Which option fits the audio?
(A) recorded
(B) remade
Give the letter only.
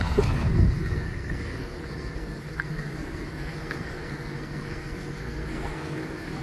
B